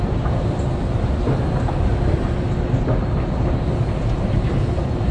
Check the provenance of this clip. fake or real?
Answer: real